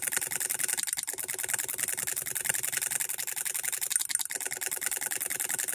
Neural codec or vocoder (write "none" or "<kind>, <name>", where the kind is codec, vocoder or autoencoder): none